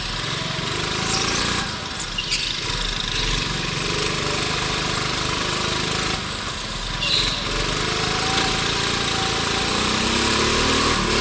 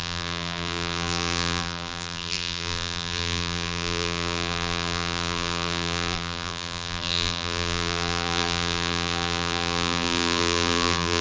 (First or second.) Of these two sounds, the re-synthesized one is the second